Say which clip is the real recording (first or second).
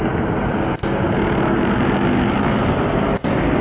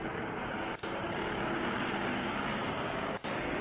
first